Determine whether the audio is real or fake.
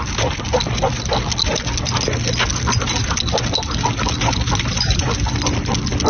real